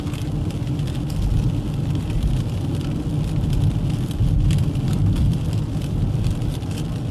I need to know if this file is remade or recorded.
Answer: recorded